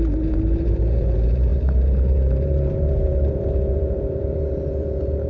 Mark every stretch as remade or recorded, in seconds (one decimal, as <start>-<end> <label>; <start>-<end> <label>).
0.0-5.3 remade